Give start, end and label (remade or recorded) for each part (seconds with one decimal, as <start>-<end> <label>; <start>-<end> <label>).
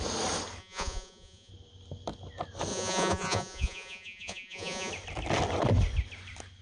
0.0-0.6 recorded; 0.6-1.5 remade; 1.5-2.7 recorded; 2.7-4.9 remade; 4.9-6.6 recorded